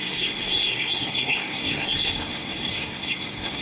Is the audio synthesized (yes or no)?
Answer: yes